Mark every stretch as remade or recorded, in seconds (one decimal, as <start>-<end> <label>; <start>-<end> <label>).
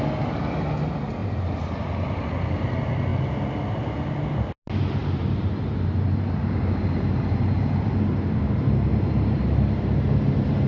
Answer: 0.0-1.2 recorded; 1.2-2.7 remade; 2.7-5.0 recorded; 5.0-10.2 remade; 10.2-10.7 recorded